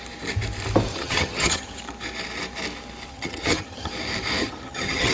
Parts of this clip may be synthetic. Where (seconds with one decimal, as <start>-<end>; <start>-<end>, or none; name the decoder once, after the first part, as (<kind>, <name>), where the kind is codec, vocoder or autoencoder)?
0.9-1.8 (vocoder, HiFi-GAN); 3.1-3.9; 4.4-5.1